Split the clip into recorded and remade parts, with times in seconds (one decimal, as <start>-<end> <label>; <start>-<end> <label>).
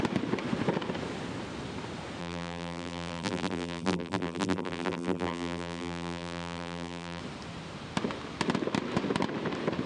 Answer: 0.0-2.2 recorded; 2.2-7.2 remade; 7.2-9.9 recorded